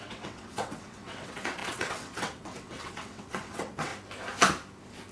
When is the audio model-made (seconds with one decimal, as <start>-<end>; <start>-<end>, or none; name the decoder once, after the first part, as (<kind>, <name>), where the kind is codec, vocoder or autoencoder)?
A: 0.0-3.9 (vocoder, WaveNeXt)